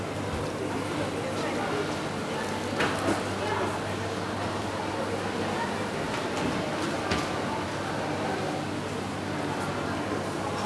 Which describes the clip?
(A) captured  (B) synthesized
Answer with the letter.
A